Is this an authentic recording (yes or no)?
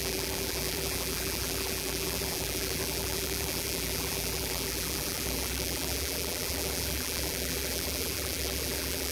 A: no